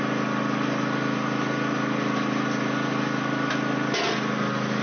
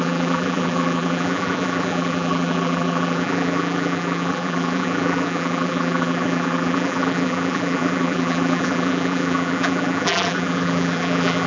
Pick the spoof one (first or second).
second